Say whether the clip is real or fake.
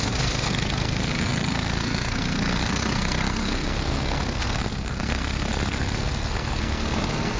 fake